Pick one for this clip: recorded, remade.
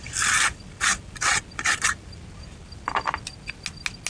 recorded